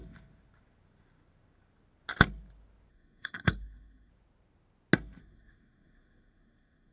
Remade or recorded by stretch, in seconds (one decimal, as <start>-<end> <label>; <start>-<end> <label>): 0.0-2.9 recorded; 2.9-4.1 remade; 4.1-5.2 recorded; 5.2-6.9 remade